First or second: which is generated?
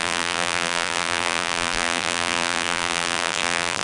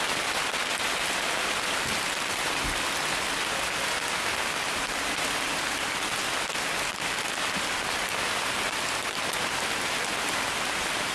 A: first